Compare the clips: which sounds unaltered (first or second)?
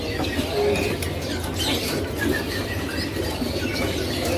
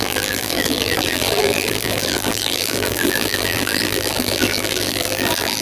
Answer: first